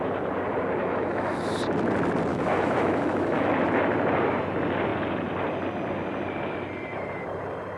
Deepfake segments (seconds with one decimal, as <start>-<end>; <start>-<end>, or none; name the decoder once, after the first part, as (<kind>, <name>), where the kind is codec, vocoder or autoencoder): 0.8-1.5 (autoencoder, DAC-VAE); 2.3-3.5